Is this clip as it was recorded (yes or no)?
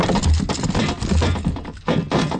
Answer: yes